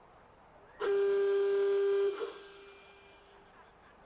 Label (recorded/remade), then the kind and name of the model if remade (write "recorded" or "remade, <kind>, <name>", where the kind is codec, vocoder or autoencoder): recorded